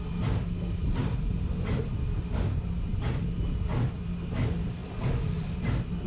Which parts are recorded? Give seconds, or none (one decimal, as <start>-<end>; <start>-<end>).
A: 0.0-6.1